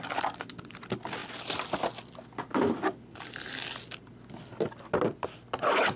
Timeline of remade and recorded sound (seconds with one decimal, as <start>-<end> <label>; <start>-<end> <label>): 0.0-6.0 recorded

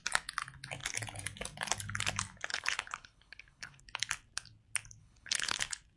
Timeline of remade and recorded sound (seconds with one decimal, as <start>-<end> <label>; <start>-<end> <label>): 0.0-2.5 recorded; 2.5-3.8 remade; 3.8-5.0 recorded; 5.0-5.6 remade; 5.6-6.0 recorded

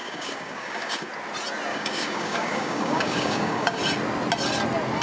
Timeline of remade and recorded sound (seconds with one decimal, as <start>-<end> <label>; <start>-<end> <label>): 0.0-1.1 remade; 1.1-1.7 recorded; 1.7-3.8 remade; 3.8-5.0 recorded

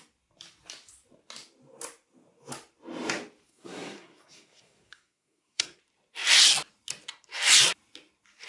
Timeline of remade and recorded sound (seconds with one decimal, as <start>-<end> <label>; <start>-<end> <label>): 0.0-3.5 recorded; 3.5-5.8 remade; 5.8-8.5 recorded

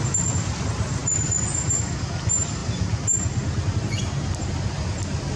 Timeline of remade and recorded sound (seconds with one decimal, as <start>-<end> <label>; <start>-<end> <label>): 0.0-5.4 recorded

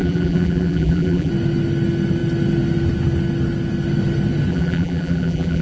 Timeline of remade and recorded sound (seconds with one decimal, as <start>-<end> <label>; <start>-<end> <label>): 0.0-1.3 remade; 1.3-4.5 recorded; 4.5-5.6 remade

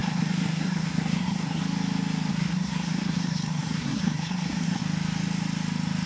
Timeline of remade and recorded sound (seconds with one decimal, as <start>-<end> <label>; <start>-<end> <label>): 0.0-1.6 remade; 1.6-2.3 recorded; 2.3-4.8 remade; 4.8-6.1 recorded